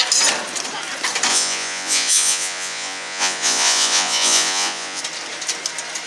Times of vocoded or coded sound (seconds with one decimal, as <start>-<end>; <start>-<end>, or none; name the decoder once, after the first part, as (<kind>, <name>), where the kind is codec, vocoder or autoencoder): 1.3-5.0 (vocoder, Vocos)